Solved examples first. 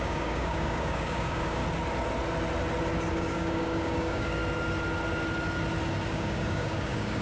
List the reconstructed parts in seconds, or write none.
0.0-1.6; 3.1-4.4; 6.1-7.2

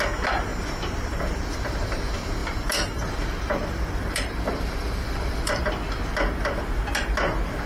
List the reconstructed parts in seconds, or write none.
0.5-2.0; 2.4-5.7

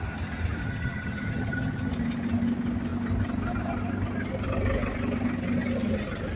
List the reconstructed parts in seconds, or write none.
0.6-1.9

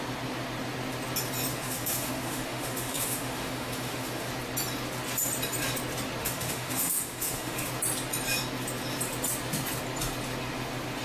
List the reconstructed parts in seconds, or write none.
1.5-4.3; 6.2-7.7

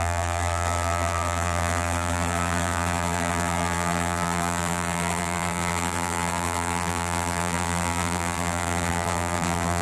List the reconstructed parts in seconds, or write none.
0.0-9.8